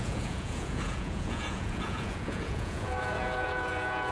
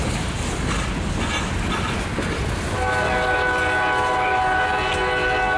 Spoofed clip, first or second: first